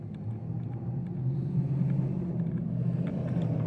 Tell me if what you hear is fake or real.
real